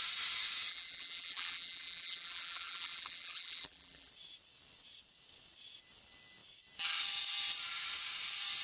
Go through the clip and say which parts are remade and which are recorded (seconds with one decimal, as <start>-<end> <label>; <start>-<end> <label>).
0.0-0.7 recorded; 0.7-4.1 remade; 4.1-8.6 recorded